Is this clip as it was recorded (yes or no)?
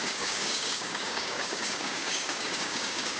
no